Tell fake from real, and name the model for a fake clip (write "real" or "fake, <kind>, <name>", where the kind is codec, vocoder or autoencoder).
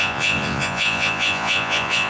fake, vocoder, Vocos